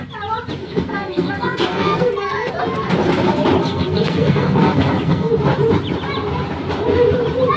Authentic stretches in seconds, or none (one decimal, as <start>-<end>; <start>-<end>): 0.0-0.6; 2.5-3.6; 5.3-7.6